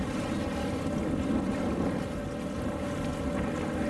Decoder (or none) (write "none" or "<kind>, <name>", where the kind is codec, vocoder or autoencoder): none